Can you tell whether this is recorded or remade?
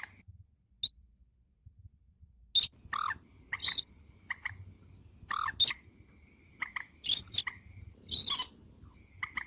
recorded